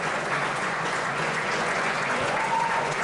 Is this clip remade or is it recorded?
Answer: remade